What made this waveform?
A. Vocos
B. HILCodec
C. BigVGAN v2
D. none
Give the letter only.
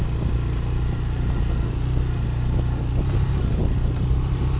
D